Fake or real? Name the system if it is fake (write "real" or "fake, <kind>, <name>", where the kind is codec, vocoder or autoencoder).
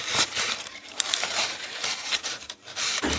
fake, vocoder, BigVGAN v2